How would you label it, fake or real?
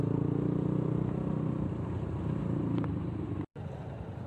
fake